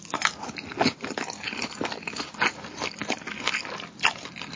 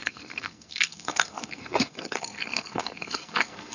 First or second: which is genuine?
first